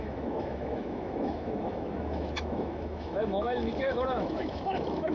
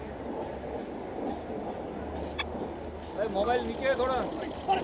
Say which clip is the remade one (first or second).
first